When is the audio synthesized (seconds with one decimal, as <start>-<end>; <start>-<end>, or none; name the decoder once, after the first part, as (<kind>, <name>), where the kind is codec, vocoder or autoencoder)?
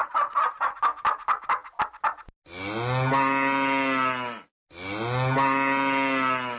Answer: 0.0-0.8 (vocoder, BigVGAN v2)